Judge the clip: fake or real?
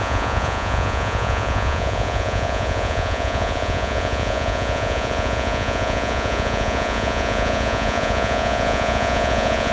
fake